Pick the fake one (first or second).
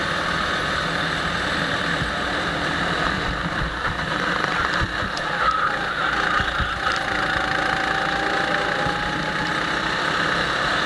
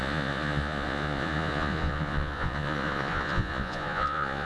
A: second